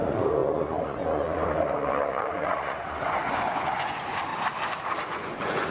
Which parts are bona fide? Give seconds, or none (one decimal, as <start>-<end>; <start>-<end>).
4.3-5.0